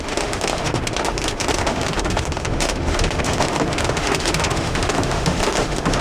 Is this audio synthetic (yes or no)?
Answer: yes